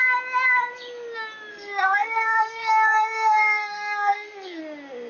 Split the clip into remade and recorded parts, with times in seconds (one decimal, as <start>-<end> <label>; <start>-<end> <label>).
0.0-1.5 recorded; 1.5-4.6 remade; 4.6-5.1 recorded